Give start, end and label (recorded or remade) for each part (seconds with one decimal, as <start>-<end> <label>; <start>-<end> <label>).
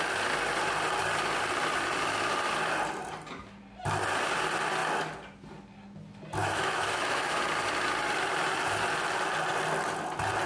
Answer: 0.0-6.4 recorded; 6.4-7.4 remade; 7.4-10.5 recorded